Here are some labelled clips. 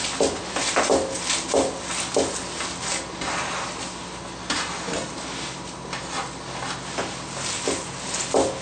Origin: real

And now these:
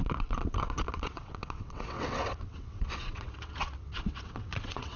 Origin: fake